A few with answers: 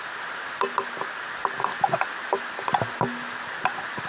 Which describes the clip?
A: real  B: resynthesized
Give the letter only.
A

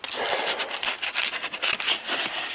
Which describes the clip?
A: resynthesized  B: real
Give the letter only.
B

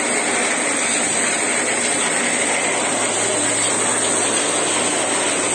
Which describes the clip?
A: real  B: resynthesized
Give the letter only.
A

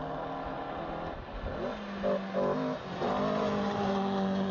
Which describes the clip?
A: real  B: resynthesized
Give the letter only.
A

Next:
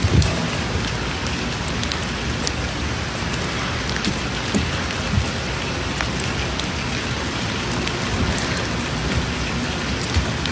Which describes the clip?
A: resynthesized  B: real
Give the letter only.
B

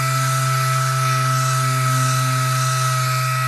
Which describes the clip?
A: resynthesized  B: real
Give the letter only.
B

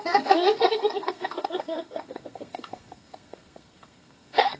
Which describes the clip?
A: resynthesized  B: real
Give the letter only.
A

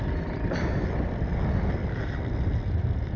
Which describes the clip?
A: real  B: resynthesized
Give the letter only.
A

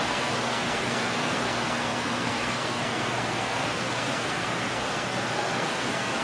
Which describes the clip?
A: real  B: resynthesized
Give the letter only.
B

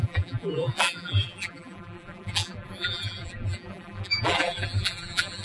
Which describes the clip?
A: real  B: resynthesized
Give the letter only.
B